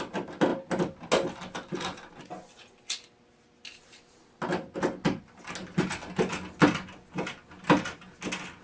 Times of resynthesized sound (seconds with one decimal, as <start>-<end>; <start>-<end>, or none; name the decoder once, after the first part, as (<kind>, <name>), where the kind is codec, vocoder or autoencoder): none